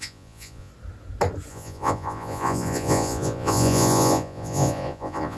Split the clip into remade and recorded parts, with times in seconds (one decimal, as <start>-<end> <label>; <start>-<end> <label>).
0.0-0.7 remade; 0.7-1.5 recorded; 1.5-5.4 remade